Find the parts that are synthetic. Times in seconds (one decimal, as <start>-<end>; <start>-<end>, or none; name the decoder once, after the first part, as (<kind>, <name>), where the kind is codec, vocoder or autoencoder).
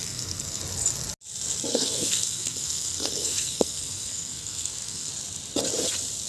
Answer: 0.0-0.6 (codec, SNAC); 1.7-5.1